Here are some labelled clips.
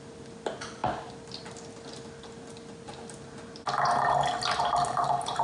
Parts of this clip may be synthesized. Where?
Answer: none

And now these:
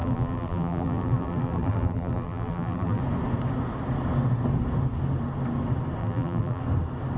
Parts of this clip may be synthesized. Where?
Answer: 0.0-3.0 (vocoder, BigVGAN v2); 6.0-6.6

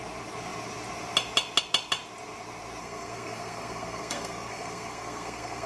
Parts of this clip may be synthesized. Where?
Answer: 2.8-5.7 (codec, SNAC)

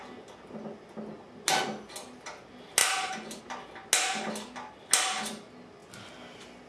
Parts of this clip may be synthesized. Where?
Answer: 2.8-3.4 (vocoder, BigVGAN v2)

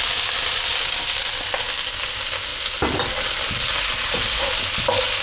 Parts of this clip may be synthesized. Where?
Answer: none

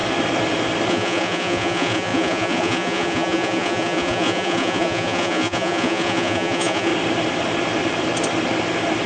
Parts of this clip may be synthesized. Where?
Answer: 0.9-6.9 (vocoder, Vocos)